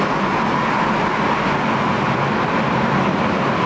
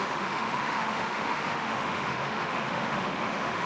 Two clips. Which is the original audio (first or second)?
first